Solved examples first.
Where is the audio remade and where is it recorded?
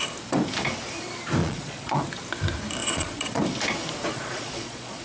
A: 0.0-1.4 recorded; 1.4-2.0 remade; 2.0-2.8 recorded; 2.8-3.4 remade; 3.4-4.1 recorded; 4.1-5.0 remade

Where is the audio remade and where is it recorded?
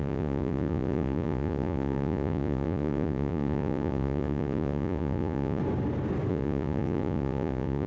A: 0.0-5.6 remade; 5.6-6.3 recorded; 6.3-7.9 remade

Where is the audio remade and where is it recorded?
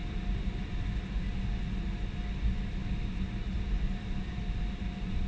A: 0.0-5.3 recorded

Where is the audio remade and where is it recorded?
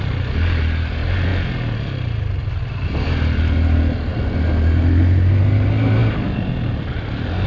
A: 0.0-7.5 recorded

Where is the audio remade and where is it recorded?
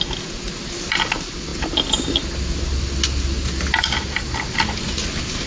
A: 0.0-5.5 recorded